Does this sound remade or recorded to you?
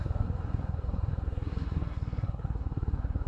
remade